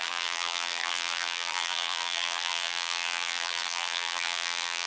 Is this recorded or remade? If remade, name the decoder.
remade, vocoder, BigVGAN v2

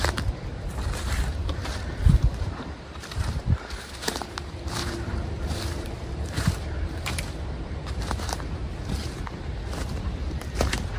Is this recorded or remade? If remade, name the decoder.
remade, vocoder, BigVGAN v2